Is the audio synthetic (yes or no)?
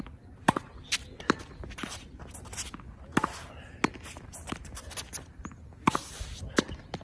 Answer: no